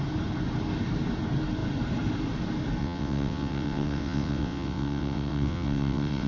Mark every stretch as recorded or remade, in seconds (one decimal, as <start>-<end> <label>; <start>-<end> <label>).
0.0-2.8 recorded; 2.8-6.3 remade